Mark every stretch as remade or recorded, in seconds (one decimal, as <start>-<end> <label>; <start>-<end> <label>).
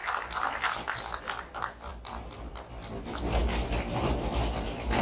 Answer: 0.0-5.0 recorded